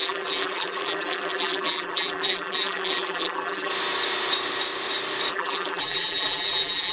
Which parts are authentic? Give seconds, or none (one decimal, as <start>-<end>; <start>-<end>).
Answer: 3.7-5.3